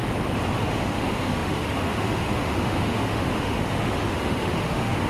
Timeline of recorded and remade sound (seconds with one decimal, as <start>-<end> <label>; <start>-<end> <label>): 0.0-0.7 recorded; 0.7-5.1 remade